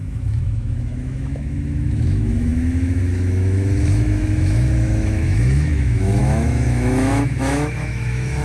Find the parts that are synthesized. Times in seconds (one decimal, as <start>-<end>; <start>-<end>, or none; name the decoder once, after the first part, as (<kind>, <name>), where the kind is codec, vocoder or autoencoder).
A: 0.0-8.4 (autoencoder, DAC-VAE)